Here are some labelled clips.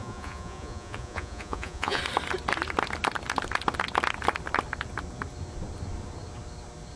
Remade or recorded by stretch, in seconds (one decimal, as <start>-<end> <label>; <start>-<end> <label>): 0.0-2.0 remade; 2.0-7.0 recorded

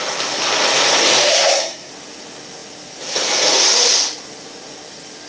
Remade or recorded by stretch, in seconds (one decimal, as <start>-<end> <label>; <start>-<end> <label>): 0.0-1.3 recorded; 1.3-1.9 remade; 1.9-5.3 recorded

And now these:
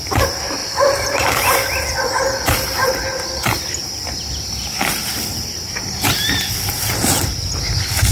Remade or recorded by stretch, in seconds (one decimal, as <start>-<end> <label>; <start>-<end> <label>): 0.0-0.6 recorded; 0.6-1.3 remade; 1.3-8.1 recorded